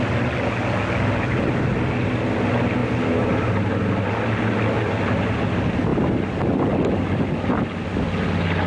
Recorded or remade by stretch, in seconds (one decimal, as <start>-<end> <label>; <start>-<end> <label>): 0.0-2.8 recorded; 2.8-3.4 remade; 3.4-8.7 recorded